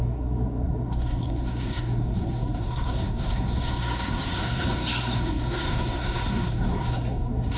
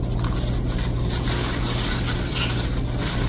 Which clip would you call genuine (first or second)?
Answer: second